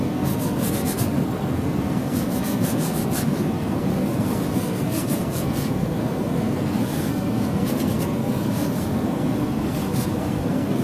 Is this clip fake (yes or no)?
yes